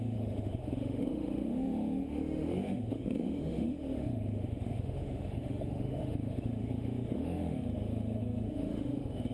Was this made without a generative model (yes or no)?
no